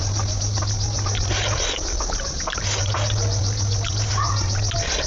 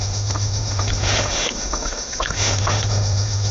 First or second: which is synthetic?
second